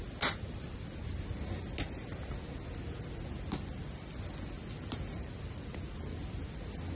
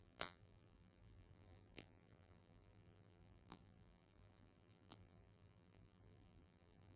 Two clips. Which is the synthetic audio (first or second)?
second